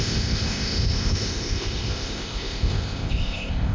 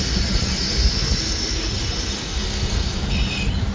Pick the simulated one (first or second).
first